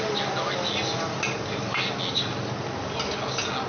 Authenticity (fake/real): real